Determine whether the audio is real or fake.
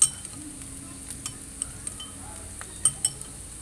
real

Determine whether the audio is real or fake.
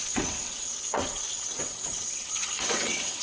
fake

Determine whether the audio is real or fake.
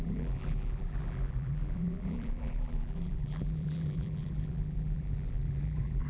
fake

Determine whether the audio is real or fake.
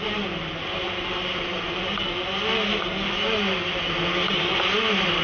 real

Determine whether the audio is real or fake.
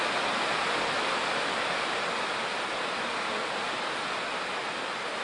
real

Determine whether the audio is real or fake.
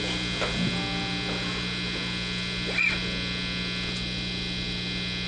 real